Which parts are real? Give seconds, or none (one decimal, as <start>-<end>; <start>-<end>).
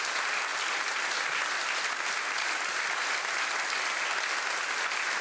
0.0-5.2